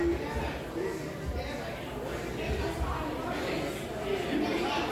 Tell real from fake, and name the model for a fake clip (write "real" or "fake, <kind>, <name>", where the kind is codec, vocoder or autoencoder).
real